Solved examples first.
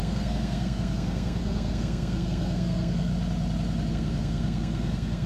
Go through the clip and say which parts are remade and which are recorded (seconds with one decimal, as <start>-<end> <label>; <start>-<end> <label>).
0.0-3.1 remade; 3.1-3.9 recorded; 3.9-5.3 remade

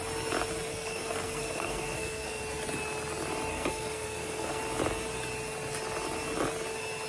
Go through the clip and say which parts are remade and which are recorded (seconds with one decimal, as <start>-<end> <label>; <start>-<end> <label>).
0.0-0.7 recorded; 0.7-2.4 remade; 2.4-3.5 recorded; 3.5-4.6 remade; 4.6-7.1 recorded

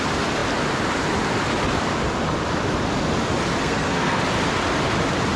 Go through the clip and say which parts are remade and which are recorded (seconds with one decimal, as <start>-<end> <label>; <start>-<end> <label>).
0.0-3.6 recorded; 3.6-4.2 remade; 4.2-5.4 recorded

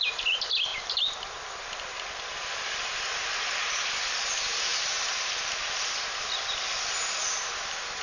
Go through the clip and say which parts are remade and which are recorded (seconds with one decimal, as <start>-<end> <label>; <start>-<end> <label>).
0.0-8.0 recorded

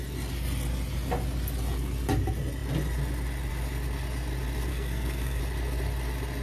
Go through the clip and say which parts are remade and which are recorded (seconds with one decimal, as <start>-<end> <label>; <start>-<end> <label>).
0.0-4.7 recorded; 4.7-5.4 remade; 5.4-6.4 recorded